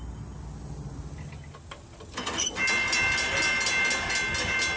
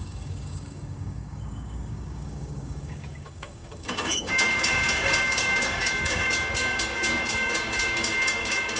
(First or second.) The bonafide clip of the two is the first